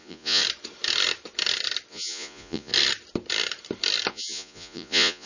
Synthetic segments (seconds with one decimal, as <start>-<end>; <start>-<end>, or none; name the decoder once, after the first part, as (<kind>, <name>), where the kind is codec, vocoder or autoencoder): 0.0-0.4 (vocoder, Vocos); 1.9-2.7; 4.1-5.3